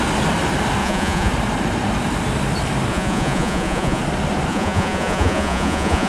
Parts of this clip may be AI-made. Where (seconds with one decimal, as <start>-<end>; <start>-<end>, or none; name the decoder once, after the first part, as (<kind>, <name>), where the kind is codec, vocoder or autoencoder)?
0.8-1.3 (vocoder, Vocos); 2.9-4.0; 4.5-6.1